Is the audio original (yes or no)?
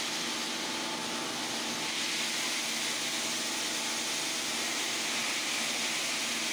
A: yes